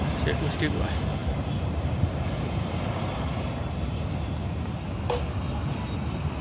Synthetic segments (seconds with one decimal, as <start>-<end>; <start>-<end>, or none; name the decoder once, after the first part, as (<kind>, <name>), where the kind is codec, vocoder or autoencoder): 1.2-5.0 (vocoder, BigVGAN v2)